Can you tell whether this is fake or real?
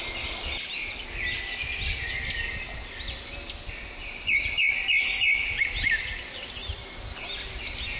real